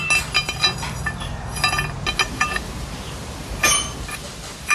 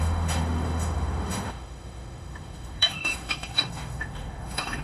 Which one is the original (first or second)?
first